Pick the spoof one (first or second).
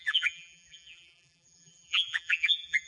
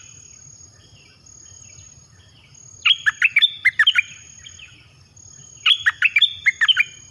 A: first